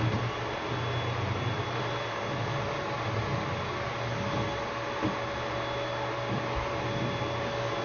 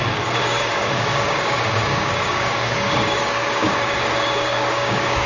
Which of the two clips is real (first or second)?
first